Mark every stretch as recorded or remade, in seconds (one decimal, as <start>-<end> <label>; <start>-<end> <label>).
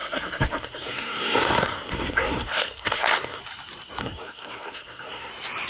0.0-3.4 remade; 3.4-4.0 recorded; 4.0-5.3 remade; 5.3-5.7 recorded